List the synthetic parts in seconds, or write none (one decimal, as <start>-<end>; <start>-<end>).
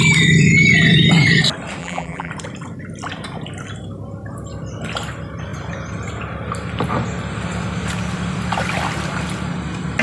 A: 1.8-2.3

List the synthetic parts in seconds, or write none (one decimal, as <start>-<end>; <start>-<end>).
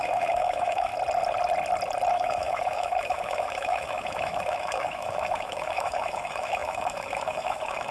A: 0.0-0.9; 2.1-7.9